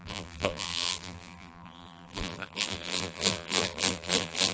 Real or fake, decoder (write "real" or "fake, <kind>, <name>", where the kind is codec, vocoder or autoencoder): fake, vocoder, BigVGAN v2